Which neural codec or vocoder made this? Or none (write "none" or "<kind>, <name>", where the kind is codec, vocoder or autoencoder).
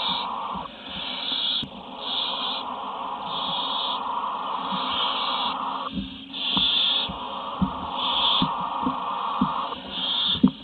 none